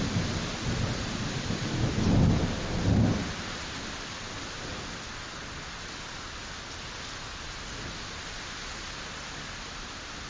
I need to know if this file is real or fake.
real